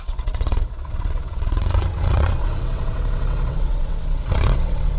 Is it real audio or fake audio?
fake